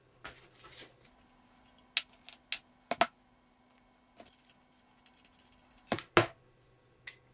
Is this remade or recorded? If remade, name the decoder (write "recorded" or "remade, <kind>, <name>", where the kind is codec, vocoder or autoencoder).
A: recorded